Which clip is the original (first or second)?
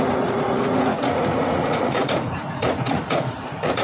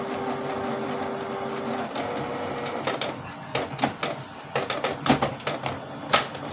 second